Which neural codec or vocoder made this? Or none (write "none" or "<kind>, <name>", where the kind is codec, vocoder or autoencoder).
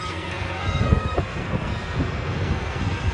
codec, SNAC